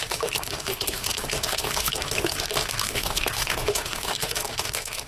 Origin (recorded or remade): remade